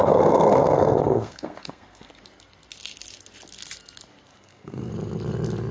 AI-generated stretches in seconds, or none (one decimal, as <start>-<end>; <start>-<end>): 0.0-2.1; 4.3-4.9